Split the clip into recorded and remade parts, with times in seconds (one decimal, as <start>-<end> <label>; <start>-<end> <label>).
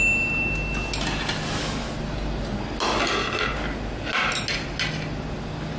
0.0-5.8 recorded